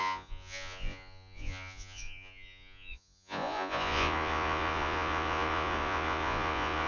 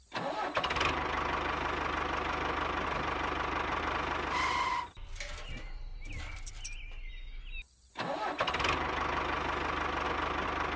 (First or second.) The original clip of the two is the second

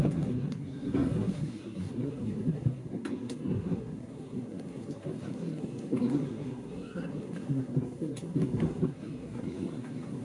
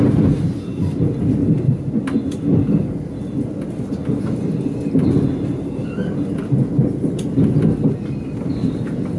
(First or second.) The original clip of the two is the second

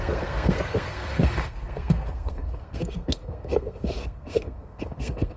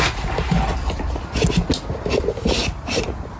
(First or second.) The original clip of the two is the second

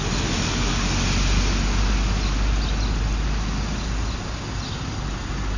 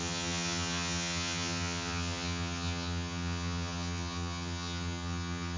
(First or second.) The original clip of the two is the first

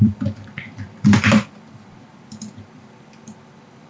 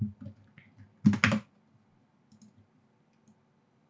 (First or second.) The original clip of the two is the second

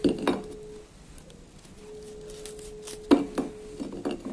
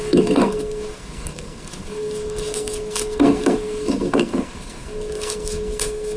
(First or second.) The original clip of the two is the first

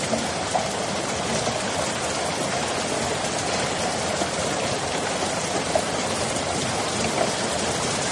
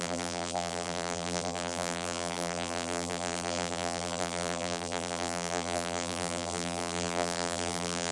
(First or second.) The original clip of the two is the first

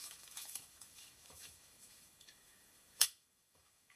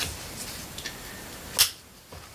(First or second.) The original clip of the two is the second